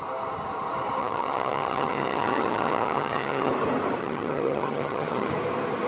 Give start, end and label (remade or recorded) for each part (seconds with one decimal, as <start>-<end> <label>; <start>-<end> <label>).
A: 0.0-1.0 recorded; 1.0-3.5 remade; 3.5-4.0 recorded; 4.0-5.3 remade; 5.3-5.9 recorded